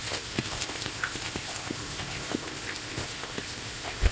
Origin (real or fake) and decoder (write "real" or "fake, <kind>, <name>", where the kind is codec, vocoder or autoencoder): fake, codec, ZipCodec